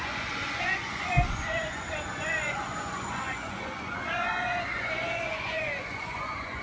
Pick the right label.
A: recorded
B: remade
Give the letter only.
B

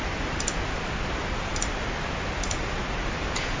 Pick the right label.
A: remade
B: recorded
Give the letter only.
B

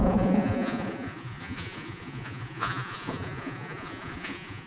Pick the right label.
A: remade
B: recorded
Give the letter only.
A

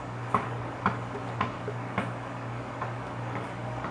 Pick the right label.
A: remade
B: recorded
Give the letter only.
A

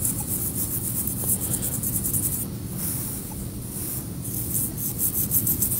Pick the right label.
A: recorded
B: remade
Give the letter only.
A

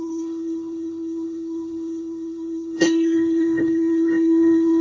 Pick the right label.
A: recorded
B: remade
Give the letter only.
B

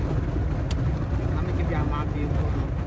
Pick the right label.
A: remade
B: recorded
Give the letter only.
B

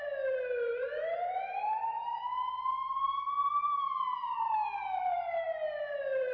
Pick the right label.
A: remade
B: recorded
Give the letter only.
A